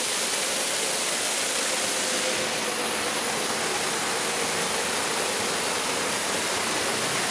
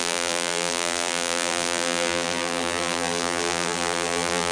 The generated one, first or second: second